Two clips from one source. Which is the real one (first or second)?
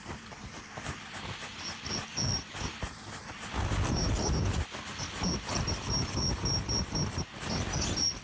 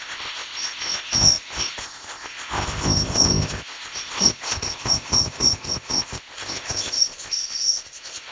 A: first